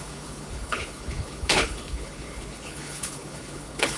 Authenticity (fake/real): fake